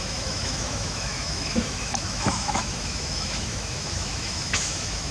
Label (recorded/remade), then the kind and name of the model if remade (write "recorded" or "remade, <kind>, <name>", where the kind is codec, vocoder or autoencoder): remade, autoencoder, DAC-VAE